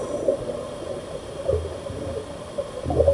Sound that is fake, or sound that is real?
real